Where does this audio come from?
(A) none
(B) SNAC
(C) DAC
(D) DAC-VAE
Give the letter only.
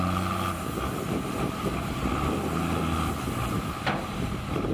A